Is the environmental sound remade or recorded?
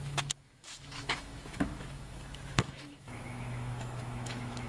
remade